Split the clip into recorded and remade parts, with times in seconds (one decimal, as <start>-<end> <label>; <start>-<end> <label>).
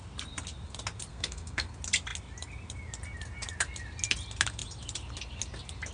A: 0.0-1.1 recorded; 1.1-1.7 remade; 1.7-5.9 recorded